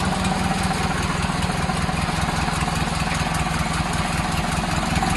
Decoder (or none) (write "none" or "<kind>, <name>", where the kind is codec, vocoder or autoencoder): none